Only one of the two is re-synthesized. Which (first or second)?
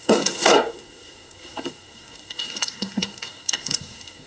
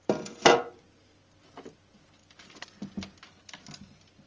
first